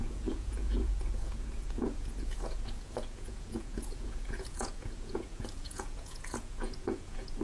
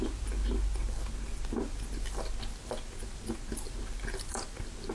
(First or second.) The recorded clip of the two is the second